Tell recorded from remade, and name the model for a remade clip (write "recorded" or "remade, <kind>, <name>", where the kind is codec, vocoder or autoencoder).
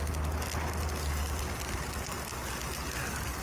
recorded